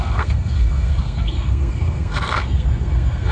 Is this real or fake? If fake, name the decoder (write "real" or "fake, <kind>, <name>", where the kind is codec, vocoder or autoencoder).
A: fake, codec, SNAC